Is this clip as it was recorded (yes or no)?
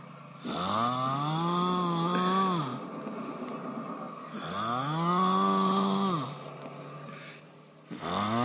yes